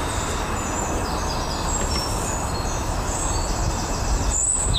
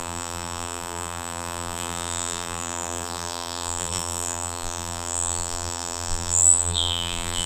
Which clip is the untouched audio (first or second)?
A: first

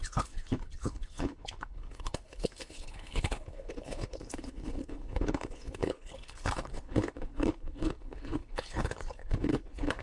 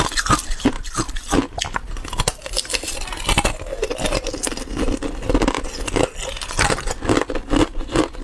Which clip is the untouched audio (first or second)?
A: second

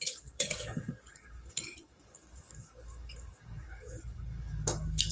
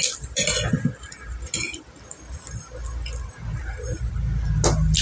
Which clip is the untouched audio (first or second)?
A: second